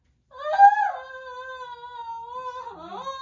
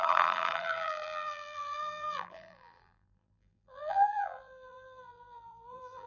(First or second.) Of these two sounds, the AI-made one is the second